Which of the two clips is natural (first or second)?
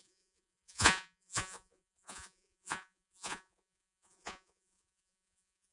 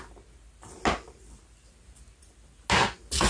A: second